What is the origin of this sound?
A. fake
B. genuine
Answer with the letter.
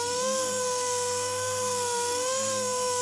A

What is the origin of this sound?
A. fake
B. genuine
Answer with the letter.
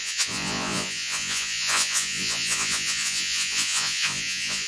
A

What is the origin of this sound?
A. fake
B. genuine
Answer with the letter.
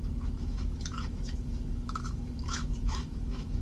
A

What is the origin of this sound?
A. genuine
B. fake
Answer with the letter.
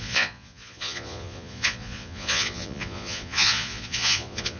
B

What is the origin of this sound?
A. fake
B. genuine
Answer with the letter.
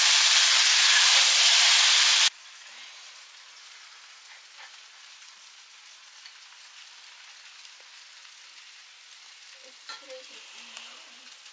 B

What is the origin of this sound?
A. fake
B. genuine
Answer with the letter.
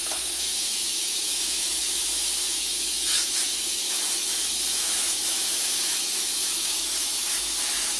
A